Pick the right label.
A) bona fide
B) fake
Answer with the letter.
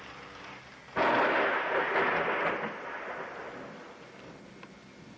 A